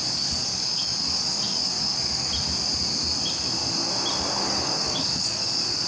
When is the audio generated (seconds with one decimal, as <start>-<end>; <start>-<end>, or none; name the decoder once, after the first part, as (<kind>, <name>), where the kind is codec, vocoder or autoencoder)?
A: 0.0-2.3 (codec, DAC); 4.4-5.9